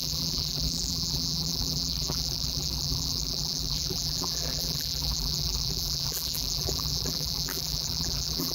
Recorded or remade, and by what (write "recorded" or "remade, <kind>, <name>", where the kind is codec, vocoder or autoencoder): remade, vocoder, BigVGAN v2